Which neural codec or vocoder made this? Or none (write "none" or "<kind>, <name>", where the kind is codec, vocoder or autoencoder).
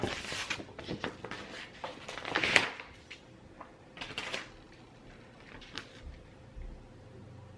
none